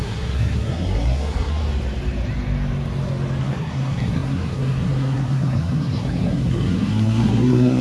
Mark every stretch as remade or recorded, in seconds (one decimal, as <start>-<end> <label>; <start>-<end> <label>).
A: 0.0-1.6 remade; 1.6-3.4 recorded; 3.4-7.8 remade